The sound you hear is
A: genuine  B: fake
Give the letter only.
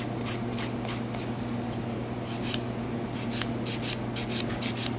A